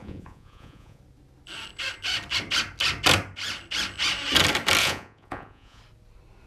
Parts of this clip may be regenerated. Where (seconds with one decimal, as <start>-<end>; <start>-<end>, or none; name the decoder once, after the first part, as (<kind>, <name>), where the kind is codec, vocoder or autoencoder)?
0.0-1.0 (vocoder, Vocos); 4.8-5.8